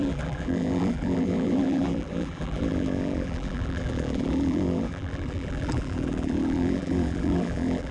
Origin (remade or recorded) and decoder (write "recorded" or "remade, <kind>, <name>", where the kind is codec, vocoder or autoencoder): remade, vocoder, BigVGAN v2